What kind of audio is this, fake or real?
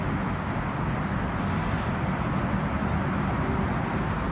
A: real